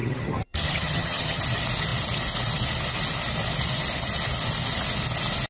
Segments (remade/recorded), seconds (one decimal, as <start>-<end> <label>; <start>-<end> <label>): 0.0-1.4 remade; 1.4-5.5 recorded